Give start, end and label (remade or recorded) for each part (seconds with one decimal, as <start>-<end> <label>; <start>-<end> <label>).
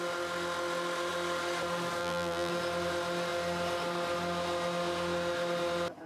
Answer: 0.0-2.0 recorded; 2.0-2.5 remade; 2.5-6.1 recorded